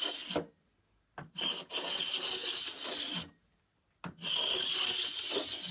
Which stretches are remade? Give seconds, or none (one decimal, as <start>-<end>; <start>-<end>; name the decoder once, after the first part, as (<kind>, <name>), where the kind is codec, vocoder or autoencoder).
none